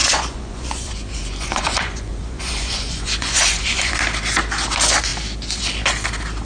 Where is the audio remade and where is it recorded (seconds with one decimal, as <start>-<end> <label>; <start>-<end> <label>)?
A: 0.0-3.9 remade; 3.9-6.5 recorded